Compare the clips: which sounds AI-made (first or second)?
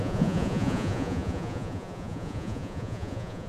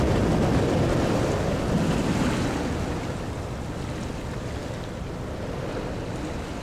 first